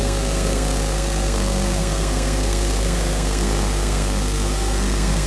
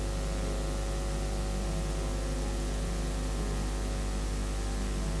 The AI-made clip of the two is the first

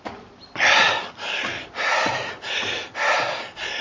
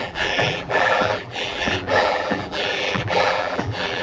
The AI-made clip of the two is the second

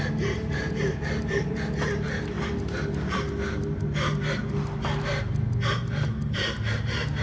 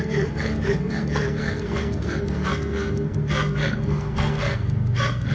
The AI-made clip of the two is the second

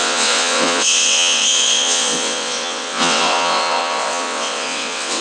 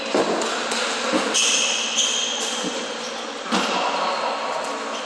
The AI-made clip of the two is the first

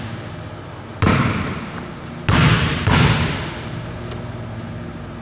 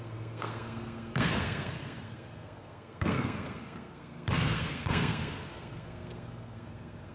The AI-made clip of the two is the second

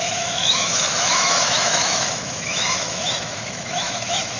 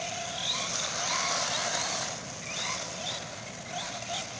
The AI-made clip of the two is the first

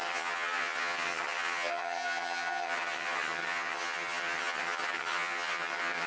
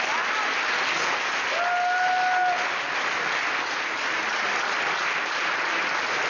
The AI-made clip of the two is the first